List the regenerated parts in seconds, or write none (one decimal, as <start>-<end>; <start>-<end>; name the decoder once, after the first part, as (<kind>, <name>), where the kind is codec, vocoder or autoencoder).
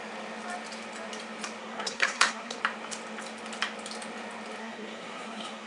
1.6-2.6 (codec, SNAC); 4.6-5.7